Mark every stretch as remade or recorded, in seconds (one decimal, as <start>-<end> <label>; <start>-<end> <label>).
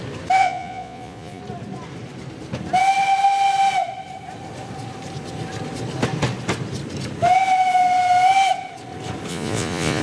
0.0-0.4 recorded; 0.4-1.4 remade; 1.4-9.3 recorded; 9.3-10.0 remade